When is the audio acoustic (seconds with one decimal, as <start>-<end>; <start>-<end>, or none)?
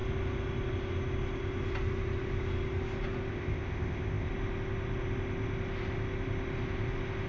0.0-3.3; 4.3-7.3